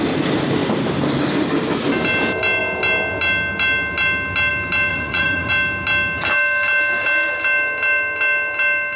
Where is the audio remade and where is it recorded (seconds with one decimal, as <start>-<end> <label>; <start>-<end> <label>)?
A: 0.0-4.9 recorded; 4.9-5.5 remade; 5.5-9.0 recorded